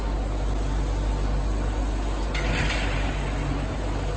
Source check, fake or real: real